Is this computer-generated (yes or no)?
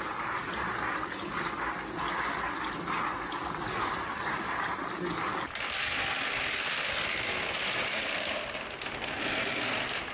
no